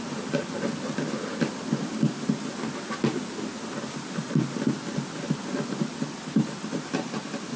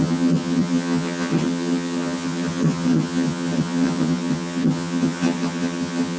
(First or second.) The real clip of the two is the first